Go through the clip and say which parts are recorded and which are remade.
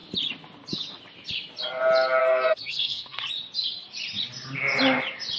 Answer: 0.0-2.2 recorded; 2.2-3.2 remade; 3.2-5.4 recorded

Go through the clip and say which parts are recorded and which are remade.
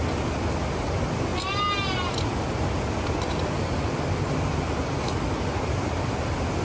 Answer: 0.0-6.6 recorded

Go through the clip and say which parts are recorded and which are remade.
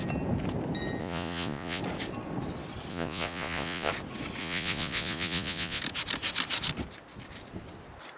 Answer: 0.0-1.0 recorded; 1.0-1.8 remade; 1.8-2.9 recorded; 2.9-3.9 remade; 3.9-4.4 recorded; 4.4-5.8 remade; 5.8-8.2 recorded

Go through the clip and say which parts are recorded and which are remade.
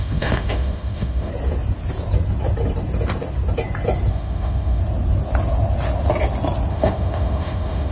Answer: 0.0-1.3 remade; 1.3-4.1 recorded; 4.1-4.8 remade; 4.8-6.7 recorded; 6.7-7.9 remade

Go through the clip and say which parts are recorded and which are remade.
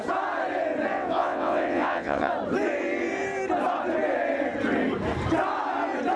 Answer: 0.0-0.9 recorded; 0.9-2.3 remade; 2.3-6.2 recorded